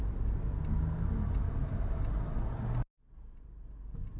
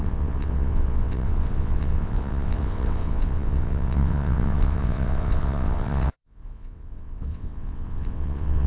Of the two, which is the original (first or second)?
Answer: first